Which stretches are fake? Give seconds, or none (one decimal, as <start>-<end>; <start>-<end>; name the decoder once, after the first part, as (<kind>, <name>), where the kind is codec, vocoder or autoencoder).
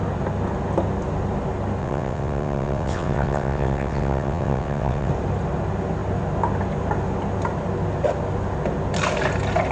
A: 1.8-5.1 (vocoder, WaveNeXt)